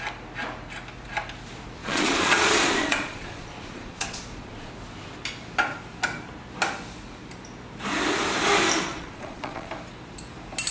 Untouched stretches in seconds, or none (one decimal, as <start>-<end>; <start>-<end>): 0.0-1.8; 4.7-8.9; 9.7-10.7